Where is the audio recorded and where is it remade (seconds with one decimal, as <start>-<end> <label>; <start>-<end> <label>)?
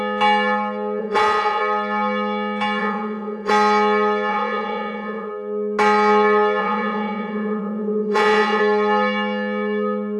0.0-1.0 recorded; 1.0-1.6 remade; 1.6-2.8 recorded; 2.8-3.5 remade; 3.5-4.3 recorded; 4.3-5.3 remade; 5.3-6.6 recorded; 6.6-8.6 remade; 8.6-10.2 recorded